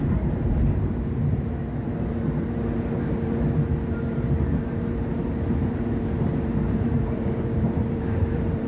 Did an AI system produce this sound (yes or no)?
yes